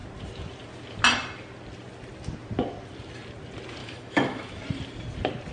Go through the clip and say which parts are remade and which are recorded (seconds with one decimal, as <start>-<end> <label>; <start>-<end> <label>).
0.0-3.8 recorded; 3.8-4.6 remade; 4.6-5.5 recorded